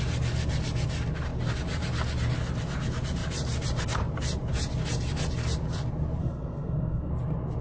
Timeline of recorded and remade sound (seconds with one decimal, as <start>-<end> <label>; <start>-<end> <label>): 0.0-6.2 recorded; 6.2-7.1 remade; 7.1-7.6 recorded